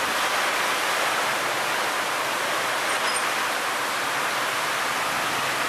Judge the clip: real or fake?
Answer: real